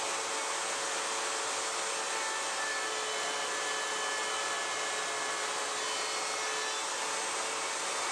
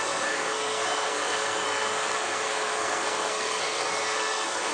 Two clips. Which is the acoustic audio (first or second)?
first